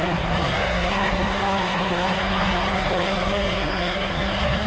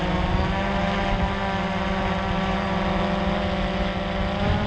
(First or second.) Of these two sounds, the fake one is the first